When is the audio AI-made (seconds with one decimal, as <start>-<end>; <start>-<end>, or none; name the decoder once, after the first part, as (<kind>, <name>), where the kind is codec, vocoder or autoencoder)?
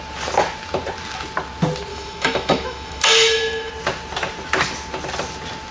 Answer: 1.9-3.7 (autoencoder, DAC-VAE)